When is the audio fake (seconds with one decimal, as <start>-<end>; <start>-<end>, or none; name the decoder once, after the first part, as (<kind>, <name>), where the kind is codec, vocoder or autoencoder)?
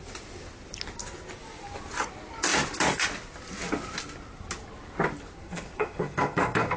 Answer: 5.4-6.8 (codec, SNAC)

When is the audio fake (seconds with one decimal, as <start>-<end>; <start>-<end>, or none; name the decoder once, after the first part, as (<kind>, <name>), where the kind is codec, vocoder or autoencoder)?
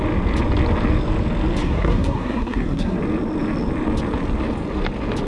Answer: 1.6-3.0 (codec, SNAC)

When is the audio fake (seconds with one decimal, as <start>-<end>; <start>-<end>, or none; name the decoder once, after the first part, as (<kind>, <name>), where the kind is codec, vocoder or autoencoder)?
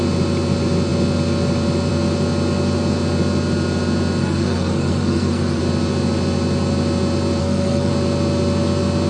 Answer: 4.2-5.6 (codec, SNAC); 7.4-7.9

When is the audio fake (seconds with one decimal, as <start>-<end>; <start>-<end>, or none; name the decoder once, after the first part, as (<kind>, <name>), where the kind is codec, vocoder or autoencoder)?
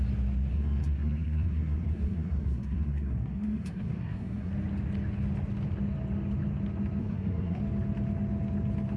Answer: 0.5-4.5 (codec, SNAC); 7.0-7.6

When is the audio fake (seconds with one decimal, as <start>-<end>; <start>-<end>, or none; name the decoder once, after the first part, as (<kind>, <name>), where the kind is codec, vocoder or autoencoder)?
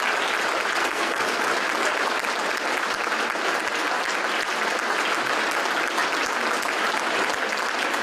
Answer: 0.8-1.4 (codec, SNAC)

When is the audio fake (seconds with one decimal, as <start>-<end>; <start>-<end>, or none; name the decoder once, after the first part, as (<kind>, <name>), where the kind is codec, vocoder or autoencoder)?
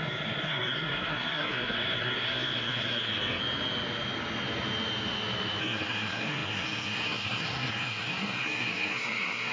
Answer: 0.0-3.4 (codec, SNAC); 5.6-9.5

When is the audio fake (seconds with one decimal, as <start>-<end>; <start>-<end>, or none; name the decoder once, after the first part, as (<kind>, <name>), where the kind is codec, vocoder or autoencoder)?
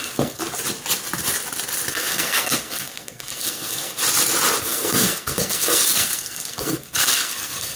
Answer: 0.0-0.4 (codec, SNAC); 1.9-4.0; 4.6-7.8